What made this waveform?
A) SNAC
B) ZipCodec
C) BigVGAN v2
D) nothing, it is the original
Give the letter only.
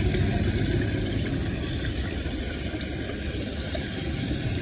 D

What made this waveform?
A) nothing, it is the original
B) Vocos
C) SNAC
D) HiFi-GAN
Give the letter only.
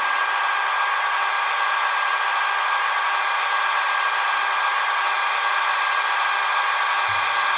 A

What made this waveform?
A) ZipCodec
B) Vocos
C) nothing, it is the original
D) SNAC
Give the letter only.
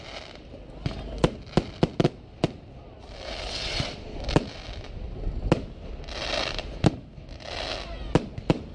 C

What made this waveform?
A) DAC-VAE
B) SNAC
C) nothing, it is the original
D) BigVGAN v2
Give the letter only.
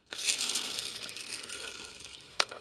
B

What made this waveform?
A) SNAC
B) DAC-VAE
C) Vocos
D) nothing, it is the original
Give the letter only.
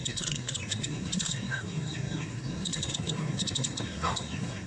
A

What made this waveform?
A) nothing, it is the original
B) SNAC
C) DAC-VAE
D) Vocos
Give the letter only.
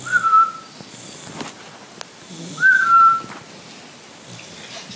A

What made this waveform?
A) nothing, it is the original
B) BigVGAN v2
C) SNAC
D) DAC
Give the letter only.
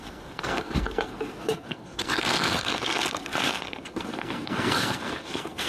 C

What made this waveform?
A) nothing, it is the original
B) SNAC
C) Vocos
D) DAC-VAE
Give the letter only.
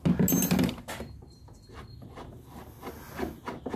A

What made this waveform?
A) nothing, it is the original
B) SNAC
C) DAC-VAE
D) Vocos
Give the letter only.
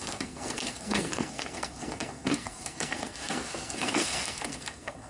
B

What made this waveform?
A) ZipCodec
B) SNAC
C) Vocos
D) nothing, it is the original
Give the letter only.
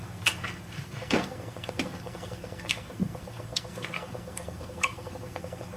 B